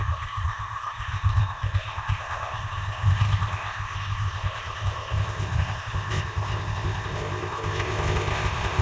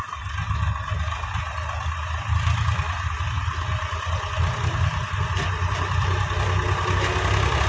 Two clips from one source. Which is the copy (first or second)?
first